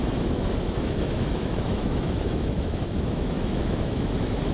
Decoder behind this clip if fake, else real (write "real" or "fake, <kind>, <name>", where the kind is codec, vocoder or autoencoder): fake, autoencoder, DAC-VAE